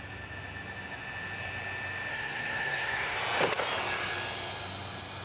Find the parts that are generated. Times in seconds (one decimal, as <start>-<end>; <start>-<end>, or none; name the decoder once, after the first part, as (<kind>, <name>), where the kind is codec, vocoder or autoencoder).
2.1-3.2 (codec, SNAC)